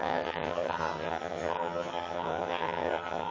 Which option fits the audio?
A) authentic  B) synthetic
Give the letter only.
B